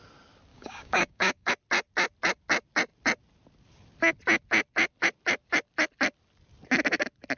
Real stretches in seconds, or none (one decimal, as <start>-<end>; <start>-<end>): 0.0-0.5; 1.5-7.4